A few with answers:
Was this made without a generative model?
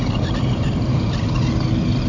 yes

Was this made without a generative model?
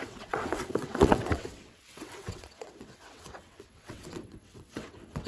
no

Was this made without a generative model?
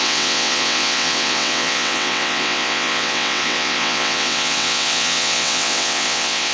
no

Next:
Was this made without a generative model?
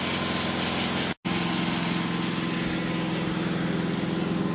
yes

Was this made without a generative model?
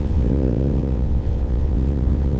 no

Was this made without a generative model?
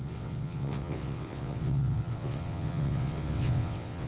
no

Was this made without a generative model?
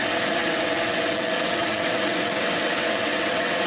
no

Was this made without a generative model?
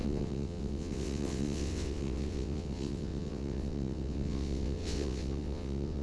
no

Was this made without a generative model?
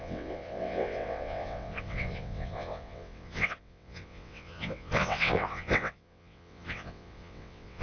no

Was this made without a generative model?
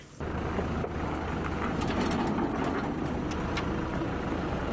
yes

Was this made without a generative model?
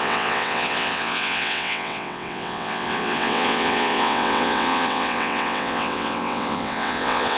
no